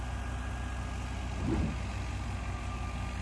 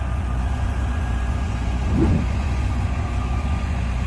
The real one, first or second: first